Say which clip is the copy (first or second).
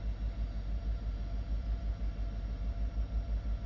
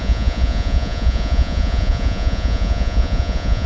second